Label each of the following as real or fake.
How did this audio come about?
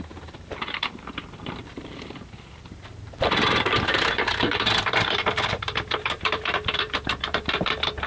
fake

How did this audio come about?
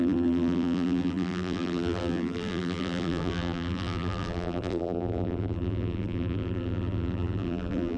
fake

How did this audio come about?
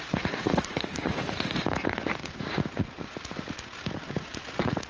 fake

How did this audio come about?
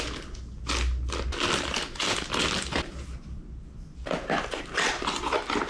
real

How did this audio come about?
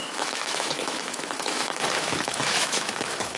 fake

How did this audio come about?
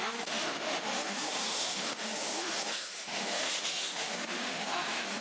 fake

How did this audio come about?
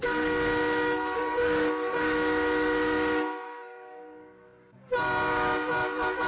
fake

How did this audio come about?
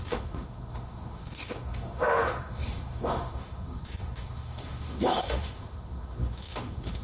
fake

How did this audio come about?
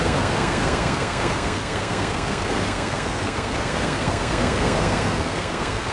fake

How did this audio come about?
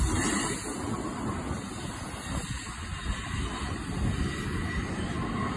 real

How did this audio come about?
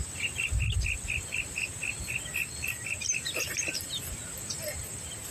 real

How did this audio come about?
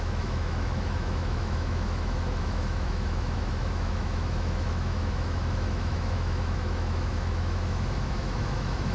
fake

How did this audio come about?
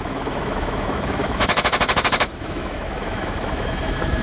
fake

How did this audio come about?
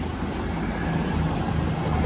real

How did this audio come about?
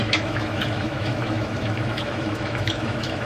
fake